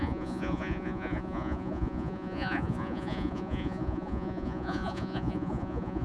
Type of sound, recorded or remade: remade